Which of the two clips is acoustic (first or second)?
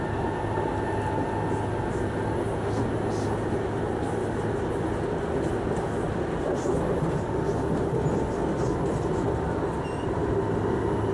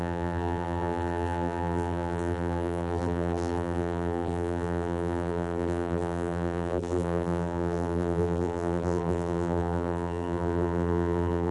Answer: first